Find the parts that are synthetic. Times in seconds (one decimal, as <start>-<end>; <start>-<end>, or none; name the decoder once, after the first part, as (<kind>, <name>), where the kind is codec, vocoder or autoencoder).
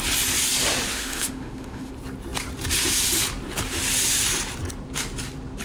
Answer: 0.9-1.9 (autoencoder, DAC-VAE)